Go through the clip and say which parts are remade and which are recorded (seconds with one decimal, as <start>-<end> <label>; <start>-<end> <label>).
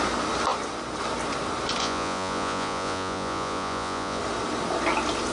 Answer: 0.0-1.8 recorded; 1.8-4.2 remade; 4.2-5.3 recorded